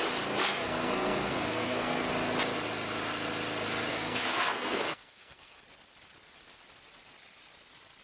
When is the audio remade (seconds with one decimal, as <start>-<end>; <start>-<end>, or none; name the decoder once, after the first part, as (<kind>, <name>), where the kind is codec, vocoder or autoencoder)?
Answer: 0.4-2.1 (codec, SNAC); 3.9-5.6